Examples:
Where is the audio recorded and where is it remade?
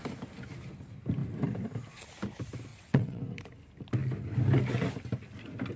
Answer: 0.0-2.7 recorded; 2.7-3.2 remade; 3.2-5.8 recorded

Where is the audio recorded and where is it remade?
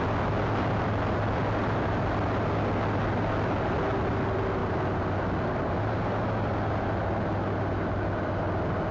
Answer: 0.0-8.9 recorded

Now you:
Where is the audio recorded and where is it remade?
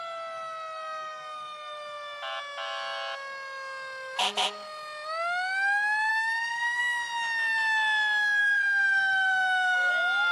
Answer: 0.0-6.1 recorded; 6.1-6.8 remade; 6.8-8.4 recorded; 8.4-9.9 remade; 9.9-10.3 recorded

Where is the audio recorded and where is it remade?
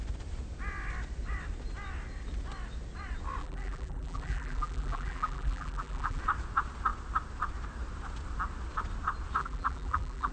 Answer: 0.0-3.4 recorded; 3.4-6.2 remade; 6.2-9.4 recorded; 9.4-10.3 remade